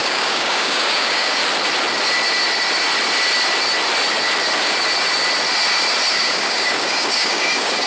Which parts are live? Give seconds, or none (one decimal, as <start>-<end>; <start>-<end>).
1.4-6.1